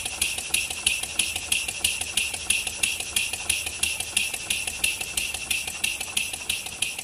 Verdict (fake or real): real